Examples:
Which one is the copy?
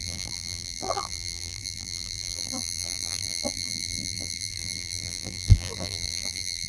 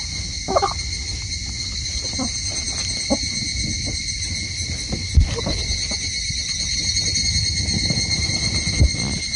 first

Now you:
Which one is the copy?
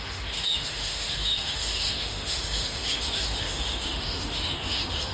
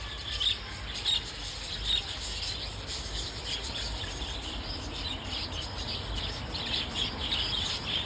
first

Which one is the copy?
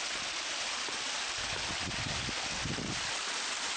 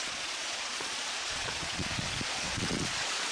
second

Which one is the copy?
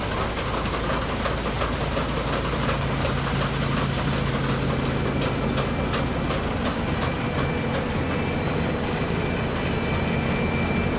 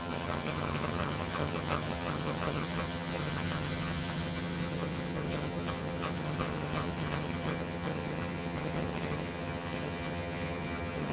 second